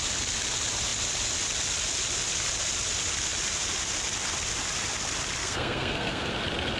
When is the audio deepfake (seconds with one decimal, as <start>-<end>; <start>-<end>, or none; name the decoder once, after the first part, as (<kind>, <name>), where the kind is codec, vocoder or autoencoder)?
5.4-6.3 (codec, SNAC)